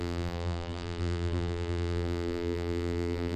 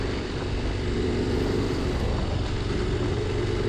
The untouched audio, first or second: second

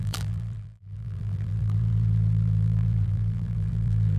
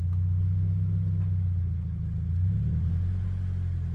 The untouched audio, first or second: second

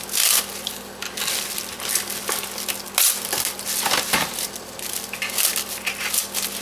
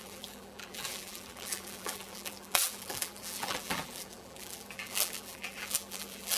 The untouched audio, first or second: first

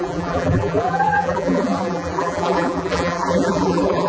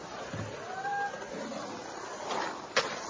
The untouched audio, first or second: second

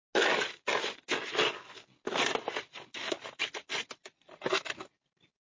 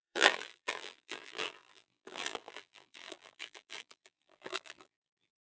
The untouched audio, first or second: first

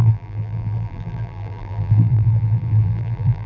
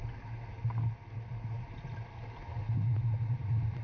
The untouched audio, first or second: second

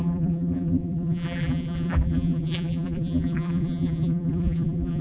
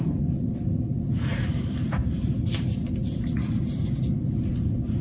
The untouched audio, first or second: second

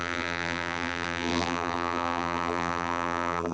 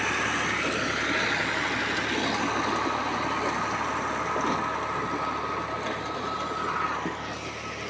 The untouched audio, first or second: second